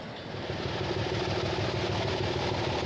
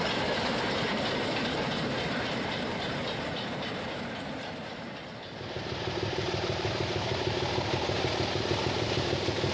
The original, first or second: first